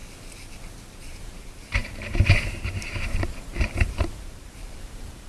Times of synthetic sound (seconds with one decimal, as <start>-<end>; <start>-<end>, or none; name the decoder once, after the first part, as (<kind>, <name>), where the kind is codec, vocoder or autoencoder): 0.9-5.3 (vocoder, BigVGAN v2)